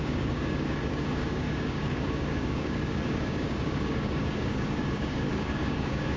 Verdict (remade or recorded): remade